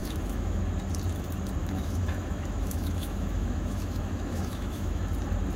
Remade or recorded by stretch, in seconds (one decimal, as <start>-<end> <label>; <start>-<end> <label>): 0.0-0.6 remade; 0.6-1.6 recorded; 1.6-5.0 remade; 5.0-5.6 recorded

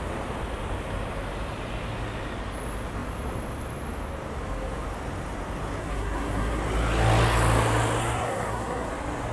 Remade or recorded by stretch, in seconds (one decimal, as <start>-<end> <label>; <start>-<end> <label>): 0.0-5.8 recorded; 5.8-6.6 remade; 6.6-8.0 recorded; 8.0-8.9 remade; 8.9-9.3 recorded